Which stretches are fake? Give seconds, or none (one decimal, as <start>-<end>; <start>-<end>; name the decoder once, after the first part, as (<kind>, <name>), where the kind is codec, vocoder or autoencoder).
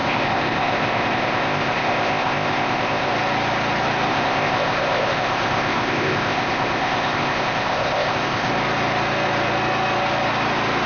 0.0-3.1 (codec, ZipCodec); 4.1-8.5